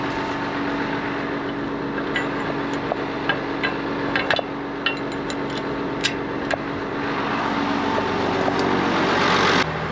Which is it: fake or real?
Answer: real